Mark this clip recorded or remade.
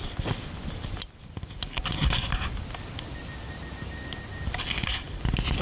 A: recorded